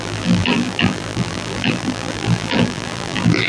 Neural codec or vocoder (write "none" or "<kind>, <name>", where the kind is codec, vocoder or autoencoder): vocoder, BigVGAN v2